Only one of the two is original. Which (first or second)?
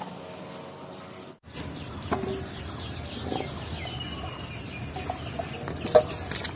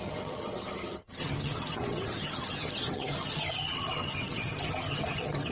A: first